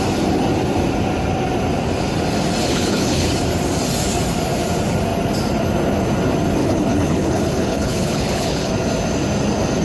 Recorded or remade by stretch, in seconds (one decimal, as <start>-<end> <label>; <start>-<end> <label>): 0.0-2.6 recorded; 2.6-3.3 remade; 3.3-6.6 recorded; 6.6-8.7 remade; 8.7-9.8 recorded